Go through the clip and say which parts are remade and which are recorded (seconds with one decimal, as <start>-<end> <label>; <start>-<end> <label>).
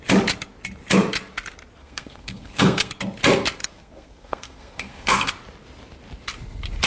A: 0.0-1.8 recorded; 1.8-2.9 remade; 2.9-3.6 recorded; 3.6-5.3 remade; 5.3-6.9 recorded